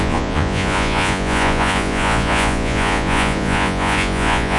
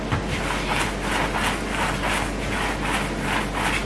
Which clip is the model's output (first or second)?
first